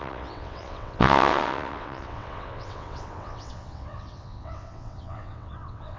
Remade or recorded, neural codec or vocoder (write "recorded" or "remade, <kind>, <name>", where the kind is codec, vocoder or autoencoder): remade, vocoder, WaveNeXt